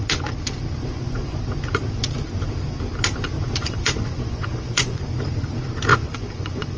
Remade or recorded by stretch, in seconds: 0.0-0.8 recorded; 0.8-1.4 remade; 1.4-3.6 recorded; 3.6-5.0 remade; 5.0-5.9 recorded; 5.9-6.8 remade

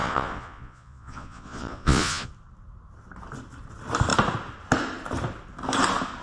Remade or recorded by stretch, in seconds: 0.0-2.3 remade; 2.3-6.2 recorded

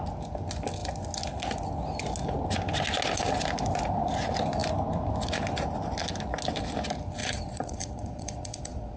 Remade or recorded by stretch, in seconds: 0.0-7.2 recorded; 7.2-9.0 remade

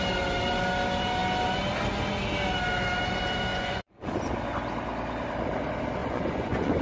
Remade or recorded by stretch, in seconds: 0.0-3.5 recorded; 3.5-4.2 remade; 4.2-6.0 recorded; 6.0-6.8 remade

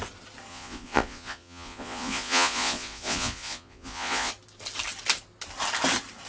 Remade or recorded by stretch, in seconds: 0.0-0.5 recorded; 0.5-4.3 remade; 4.3-6.3 recorded

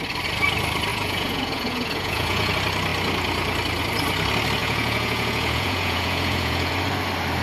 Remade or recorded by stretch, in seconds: 0.0-0.9 recorded; 0.9-2.5 remade; 2.5-4.6 recorded; 4.6-6.7 remade; 6.7-7.4 recorded

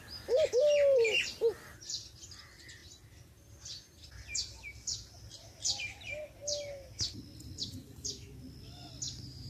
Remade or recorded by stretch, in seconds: 0.0-9.5 recorded

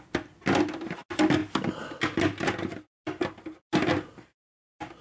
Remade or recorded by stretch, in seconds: 0.0-5.0 recorded